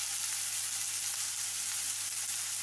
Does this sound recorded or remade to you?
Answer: recorded